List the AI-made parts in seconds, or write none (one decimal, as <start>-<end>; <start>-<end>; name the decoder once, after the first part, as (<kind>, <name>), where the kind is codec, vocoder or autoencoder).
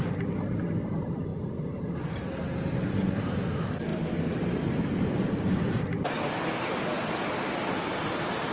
3.9-5.8 (vocoder, BigVGAN v2)